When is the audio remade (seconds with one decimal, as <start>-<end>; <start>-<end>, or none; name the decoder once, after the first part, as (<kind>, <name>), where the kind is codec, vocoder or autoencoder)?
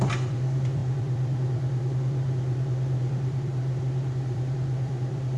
0.0-5.4 (vocoder, BigVGAN v2)